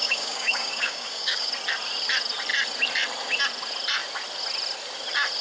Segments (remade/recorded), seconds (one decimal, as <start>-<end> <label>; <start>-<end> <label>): 0.0-1.5 remade; 1.5-5.4 recorded

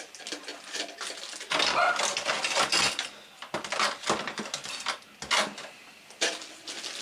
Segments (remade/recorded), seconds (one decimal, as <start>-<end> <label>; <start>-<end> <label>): 0.0-7.0 recorded

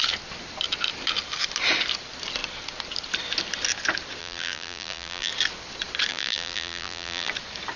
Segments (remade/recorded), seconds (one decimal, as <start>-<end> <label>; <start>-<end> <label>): 0.0-4.2 recorded; 4.2-5.3 remade; 5.3-6.1 recorded; 6.1-7.3 remade; 7.3-7.8 recorded

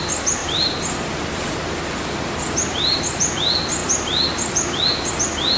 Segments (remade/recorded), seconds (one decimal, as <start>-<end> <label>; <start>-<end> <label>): 0.0-0.4 recorded; 0.4-3.0 remade; 3.0-5.6 recorded

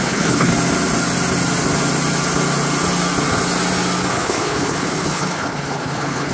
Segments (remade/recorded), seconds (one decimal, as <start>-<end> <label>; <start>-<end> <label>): 0.0-0.5 remade; 0.5-4.1 recorded; 4.1-6.3 remade